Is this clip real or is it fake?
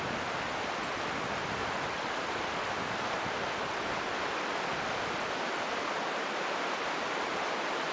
real